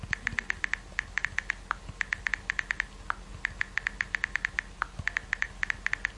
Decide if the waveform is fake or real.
real